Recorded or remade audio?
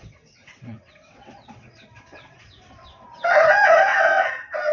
remade